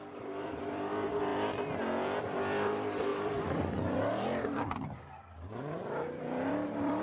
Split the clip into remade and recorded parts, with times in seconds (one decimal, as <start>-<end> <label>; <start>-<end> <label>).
0.0-1.3 remade; 1.3-2.2 recorded; 2.2-7.0 remade